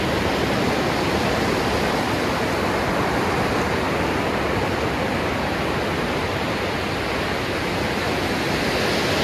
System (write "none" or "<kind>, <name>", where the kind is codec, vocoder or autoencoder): none